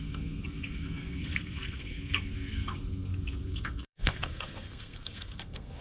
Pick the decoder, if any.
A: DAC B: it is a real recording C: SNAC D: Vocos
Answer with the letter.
C